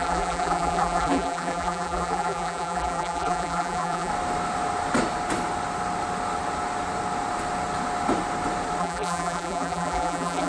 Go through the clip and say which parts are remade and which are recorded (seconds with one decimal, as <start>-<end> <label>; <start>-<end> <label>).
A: 0.0-4.1 remade; 4.1-8.8 recorded; 8.8-10.5 remade